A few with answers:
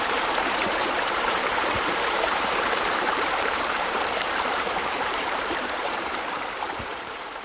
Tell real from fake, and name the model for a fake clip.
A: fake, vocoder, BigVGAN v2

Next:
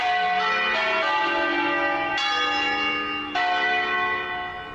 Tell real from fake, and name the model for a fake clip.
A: real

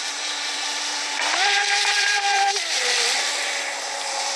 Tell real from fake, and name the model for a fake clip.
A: fake, vocoder, BigVGAN v2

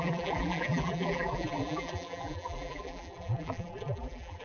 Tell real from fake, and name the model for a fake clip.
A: fake, vocoder, BigVGAN v2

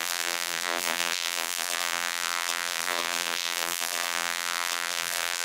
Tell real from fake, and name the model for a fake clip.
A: fake, vocoder, BigVGAN v2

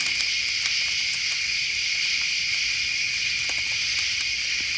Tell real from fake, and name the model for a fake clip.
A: real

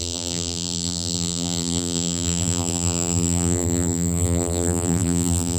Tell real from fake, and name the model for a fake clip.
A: fake, vocoder, BigVGAN v2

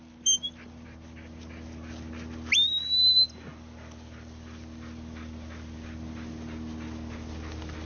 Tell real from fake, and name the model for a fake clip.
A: real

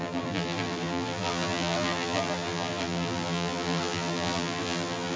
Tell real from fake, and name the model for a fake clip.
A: fake, vocoder, BigVGAN v2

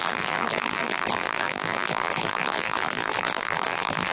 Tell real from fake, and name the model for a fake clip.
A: fake, vocoder, BigVGAN v2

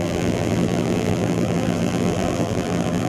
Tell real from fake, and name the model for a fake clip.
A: fake, vocoder, BigVGAN v2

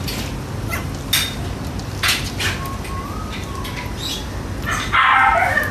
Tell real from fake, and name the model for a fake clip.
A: real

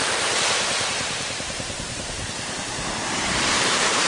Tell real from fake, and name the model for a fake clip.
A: fake, vocoder, BigVGAN v2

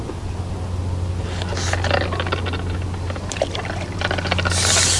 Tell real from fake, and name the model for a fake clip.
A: real